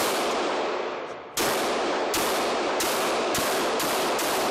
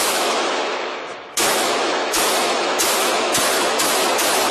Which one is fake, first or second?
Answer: second